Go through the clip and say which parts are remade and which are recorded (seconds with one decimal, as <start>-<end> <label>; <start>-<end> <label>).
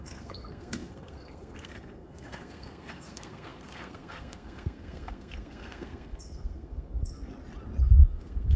0.0-7.3 remade; 7.3-7.8 recorded; 7.8-8.6 remade